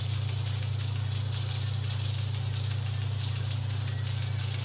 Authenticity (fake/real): real